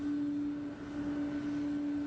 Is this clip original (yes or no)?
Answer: yes